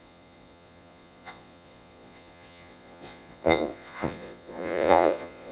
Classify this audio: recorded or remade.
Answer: remade